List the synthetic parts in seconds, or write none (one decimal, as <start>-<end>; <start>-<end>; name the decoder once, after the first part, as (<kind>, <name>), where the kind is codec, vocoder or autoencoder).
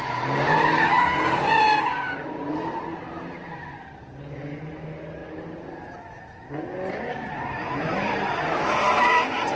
0.0-5.2 (vocoder, BigVGAN v2); 6.9-9.6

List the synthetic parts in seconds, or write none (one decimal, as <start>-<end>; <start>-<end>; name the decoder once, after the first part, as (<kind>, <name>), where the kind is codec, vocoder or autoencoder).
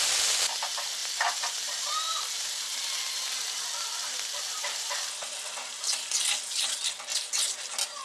1.0-5.1 (vocoder, BigVGAN v2); 7.1-8.0